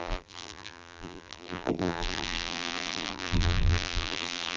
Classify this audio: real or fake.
fake